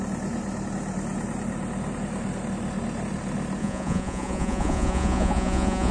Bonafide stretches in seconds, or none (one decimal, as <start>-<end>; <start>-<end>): 0.0-3.6